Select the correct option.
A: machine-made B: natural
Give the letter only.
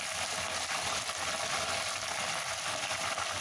B